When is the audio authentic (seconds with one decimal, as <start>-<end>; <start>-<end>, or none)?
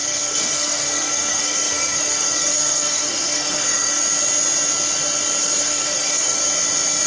4.0-5.4; 6.4-7.1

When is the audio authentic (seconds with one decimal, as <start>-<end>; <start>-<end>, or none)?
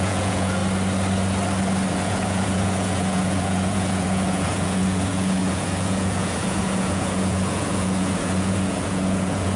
0.6-1.9